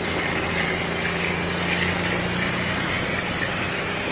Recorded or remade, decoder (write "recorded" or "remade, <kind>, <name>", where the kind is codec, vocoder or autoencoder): recorded